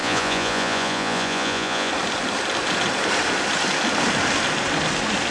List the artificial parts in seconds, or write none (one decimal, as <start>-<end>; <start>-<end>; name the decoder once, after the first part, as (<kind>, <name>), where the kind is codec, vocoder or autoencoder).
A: 0.0-1.9 (vocoder, Vocos)